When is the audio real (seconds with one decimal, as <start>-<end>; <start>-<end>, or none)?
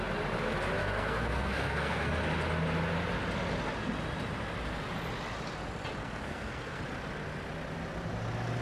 0.0-0.8; 2.1-6.0; 6.8-8.6